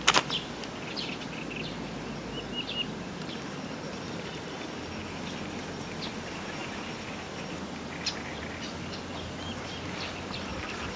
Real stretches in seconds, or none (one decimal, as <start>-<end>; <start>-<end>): 0.0-11.0